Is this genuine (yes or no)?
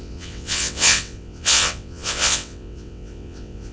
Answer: no